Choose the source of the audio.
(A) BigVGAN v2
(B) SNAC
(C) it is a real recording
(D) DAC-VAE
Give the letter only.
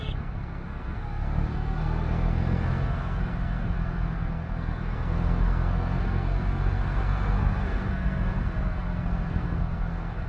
B